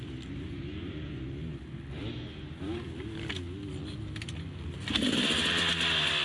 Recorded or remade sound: recorded